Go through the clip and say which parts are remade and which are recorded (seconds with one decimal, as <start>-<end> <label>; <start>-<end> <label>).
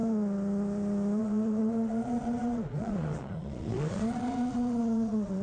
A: 0.0-1.2 recorded; 1.2-5.4 remade